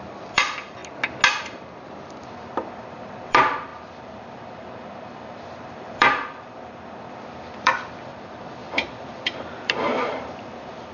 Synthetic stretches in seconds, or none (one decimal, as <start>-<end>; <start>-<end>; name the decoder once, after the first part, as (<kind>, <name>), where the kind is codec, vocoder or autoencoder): 0.0-0.8 (vocoder, BigVGAN v2); 1.4-10.9